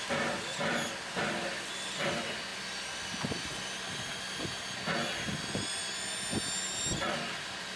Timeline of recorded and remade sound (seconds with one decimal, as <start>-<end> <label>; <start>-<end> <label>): 0.0-7.8 recorded

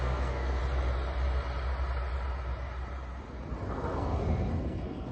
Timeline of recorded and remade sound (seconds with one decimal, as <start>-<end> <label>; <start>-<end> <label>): 0.0-0.6 remade; 0.6-3.7 recorded; 3.7-5.1 remade

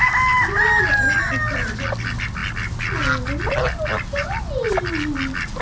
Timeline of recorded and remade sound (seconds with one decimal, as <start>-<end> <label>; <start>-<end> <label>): 0.0-5.6 recorded

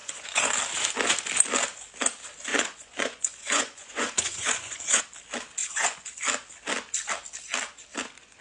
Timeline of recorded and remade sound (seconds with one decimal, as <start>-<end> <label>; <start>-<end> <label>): 0.0-0.5 remade; 0.5-2.5 recorded; 2.5-5.0 remade; 5.0-5.6 recorded; 5.6-6.2 remade; 6.2-8.4 recorded

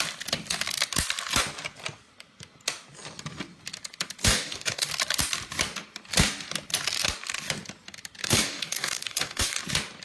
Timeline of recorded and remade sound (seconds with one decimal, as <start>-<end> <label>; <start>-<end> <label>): 0.0-4.2 recorded; 4.2-4.9 remade; 4.9-8.2 recorded; 8.2-9.6 remade; 9.6-10.0 recorded

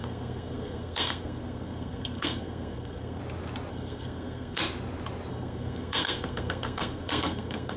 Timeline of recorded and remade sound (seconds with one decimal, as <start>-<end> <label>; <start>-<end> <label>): 0.0-3.2 remade; 3.2-3.7 recorded; 3.7-4.6 remade; 4.6-5.3 recorded; 5.3-7.8 remade